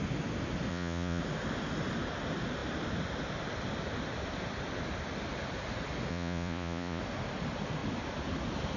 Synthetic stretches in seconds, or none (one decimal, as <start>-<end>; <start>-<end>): 0.7-1.2; 6.1-7.0